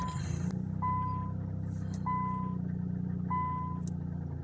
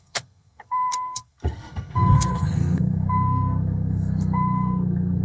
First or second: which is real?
first